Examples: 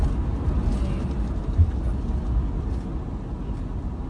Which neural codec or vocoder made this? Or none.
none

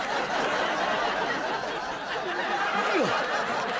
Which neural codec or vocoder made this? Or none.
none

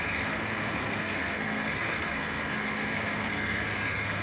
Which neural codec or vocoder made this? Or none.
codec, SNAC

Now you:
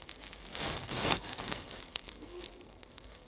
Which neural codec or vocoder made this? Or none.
codec, SNAC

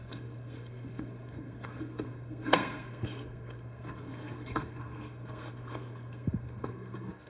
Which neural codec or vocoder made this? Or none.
codec, SNAC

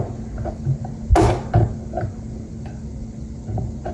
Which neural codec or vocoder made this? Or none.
none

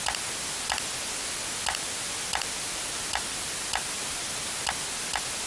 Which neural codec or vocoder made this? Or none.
none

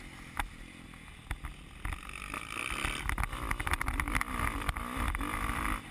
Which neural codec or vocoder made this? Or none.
none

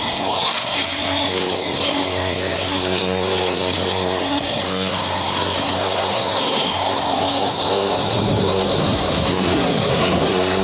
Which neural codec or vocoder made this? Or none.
codec, SNAC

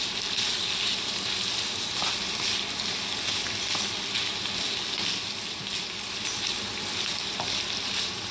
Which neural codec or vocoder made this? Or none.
none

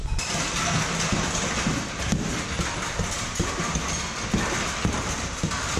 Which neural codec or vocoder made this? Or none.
none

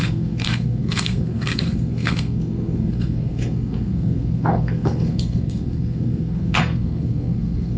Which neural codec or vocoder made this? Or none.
codec, SNAC